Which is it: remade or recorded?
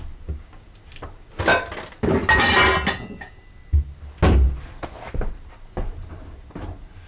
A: recorded